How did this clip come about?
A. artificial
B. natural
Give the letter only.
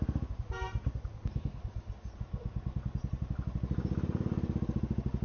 B